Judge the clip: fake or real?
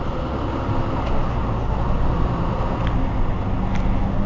real